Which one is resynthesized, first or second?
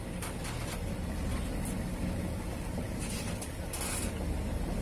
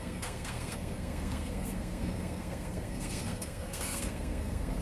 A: second